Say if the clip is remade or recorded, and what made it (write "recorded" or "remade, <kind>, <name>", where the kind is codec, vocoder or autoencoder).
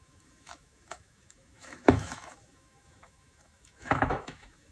remade, autoencoder, DAC-VAE